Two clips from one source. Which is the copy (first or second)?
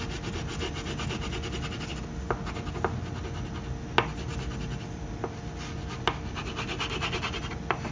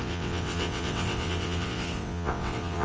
second